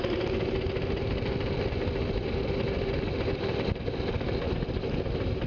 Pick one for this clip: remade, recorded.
recorded